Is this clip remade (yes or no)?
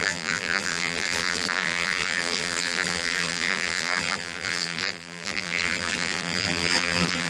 yes